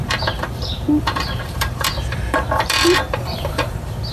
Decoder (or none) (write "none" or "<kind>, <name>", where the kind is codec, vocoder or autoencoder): vocoder, BigVGAN v2